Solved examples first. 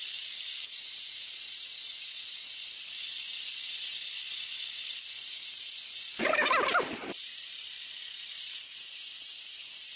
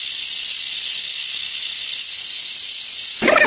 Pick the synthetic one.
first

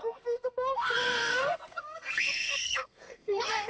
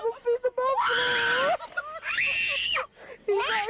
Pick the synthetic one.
first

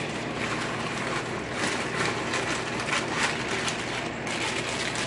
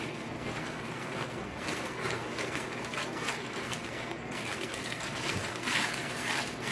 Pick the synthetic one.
second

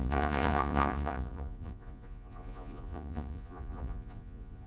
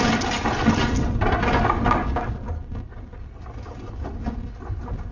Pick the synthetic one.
first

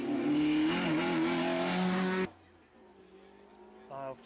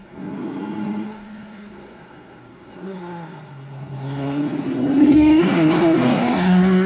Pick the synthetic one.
second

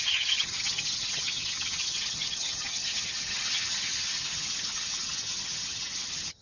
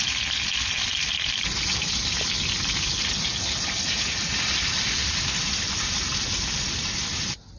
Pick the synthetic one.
first